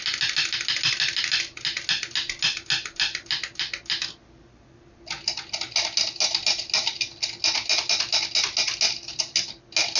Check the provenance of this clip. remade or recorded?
recorded